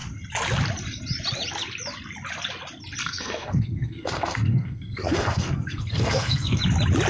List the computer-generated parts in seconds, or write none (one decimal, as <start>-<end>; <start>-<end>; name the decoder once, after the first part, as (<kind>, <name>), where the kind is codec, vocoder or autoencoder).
3.0-6.6 (codec, SNAC)